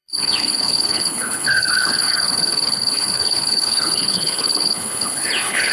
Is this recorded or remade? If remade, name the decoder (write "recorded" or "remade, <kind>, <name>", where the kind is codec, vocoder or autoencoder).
remade, codec, HILCodec